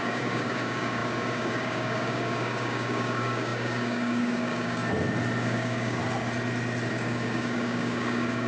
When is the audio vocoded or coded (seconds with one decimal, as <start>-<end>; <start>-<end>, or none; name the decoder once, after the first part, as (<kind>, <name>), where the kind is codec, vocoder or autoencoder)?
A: 0.0-4.8 (codec, DAC); 5.4-6.0; 6.9-8.5